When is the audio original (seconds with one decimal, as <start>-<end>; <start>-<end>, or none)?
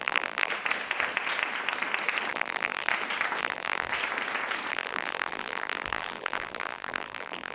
0.5-2.3; 2.9-3.4; 3.9-4.7